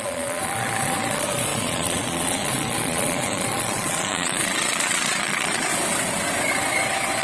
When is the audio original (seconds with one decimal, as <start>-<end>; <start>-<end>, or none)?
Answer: 5.7-7.2